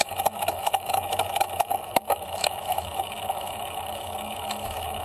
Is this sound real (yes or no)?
no